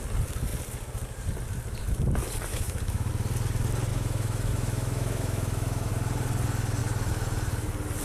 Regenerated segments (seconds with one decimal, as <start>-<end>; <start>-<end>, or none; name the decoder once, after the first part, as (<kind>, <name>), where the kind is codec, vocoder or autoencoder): 2.5-3.1 (autoencoder, DAC-VAE); 3.9-5.9